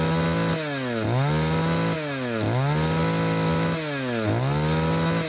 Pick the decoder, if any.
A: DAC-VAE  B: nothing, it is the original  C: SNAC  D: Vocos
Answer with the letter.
B